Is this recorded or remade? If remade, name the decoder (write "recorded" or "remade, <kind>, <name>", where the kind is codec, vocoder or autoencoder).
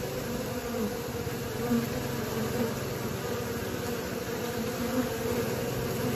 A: recorded